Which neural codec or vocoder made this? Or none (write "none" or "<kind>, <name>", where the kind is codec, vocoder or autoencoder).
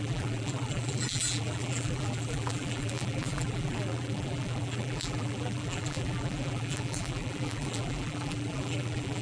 vocoder, BigVGAN v2